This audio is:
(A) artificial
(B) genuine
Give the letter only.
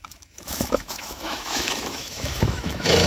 A